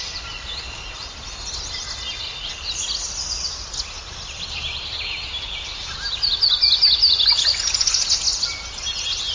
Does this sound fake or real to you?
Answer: real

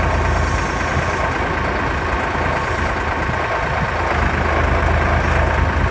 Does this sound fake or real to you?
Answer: real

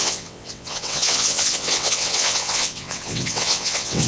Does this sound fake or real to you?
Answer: fake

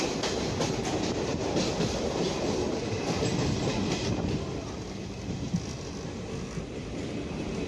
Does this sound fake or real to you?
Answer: real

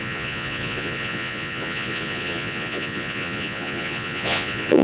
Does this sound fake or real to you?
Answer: fake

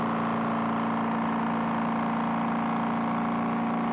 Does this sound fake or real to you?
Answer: real